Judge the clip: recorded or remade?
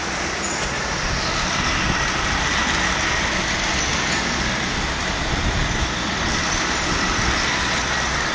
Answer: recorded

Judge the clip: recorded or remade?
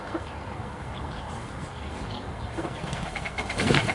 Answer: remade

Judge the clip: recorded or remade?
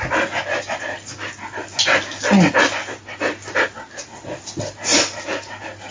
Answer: recorded